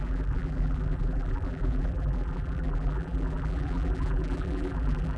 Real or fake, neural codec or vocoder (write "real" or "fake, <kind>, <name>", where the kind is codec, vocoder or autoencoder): fake, vocoder, BigVGAN v2